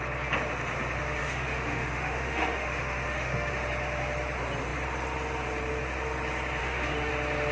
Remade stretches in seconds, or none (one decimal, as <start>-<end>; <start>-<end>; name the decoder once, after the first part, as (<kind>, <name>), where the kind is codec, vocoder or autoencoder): 1.2-3.5 (autoencoder, DAC-VAE); 6.6-7.1